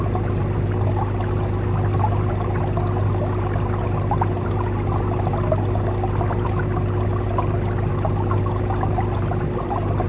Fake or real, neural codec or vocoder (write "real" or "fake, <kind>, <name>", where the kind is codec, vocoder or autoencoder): real